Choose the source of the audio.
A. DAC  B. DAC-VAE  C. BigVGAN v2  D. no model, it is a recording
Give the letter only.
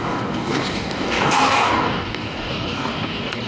A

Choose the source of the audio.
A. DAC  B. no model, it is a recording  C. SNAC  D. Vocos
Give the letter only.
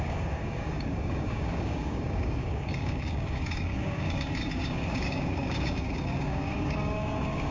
A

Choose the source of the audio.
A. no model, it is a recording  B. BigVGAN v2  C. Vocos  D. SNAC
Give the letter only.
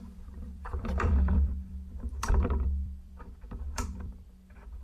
B